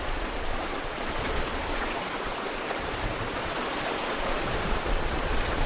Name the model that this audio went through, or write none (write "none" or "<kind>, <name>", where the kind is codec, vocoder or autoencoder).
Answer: vocoder, Vocos